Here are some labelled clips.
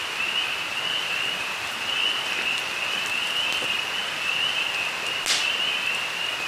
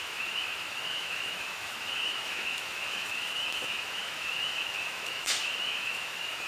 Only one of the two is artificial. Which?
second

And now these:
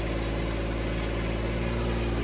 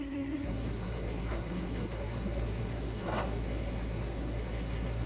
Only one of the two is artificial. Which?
second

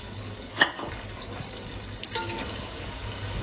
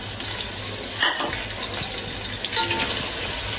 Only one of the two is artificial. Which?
first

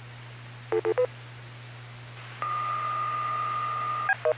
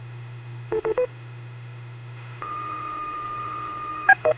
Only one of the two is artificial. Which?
second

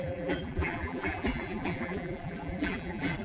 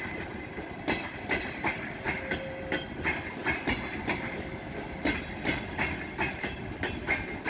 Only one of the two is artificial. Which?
first